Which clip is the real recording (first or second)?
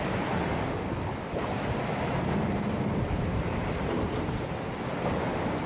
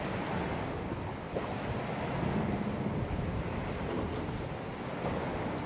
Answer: second